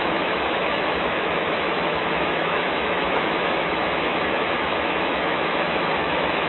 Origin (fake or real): fake